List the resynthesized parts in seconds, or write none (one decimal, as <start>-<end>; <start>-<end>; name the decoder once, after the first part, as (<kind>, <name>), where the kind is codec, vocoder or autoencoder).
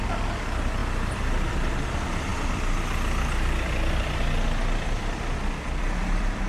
none